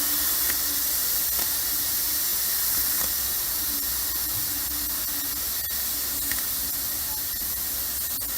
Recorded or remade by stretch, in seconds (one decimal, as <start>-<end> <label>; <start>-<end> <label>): 0.0-8.4 recorded